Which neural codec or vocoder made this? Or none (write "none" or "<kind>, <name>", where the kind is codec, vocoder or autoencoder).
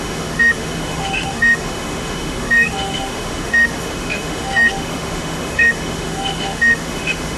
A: autoencoder, DAC-VAE